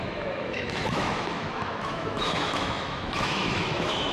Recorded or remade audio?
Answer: remade